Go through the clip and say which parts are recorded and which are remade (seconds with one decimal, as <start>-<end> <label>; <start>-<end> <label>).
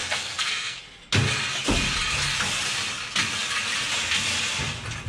0.0-0.8 remade; 0.8-5.1 recorded